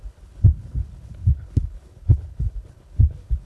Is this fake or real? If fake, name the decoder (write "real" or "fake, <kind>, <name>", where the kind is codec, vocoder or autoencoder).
fake, codec, HILCodec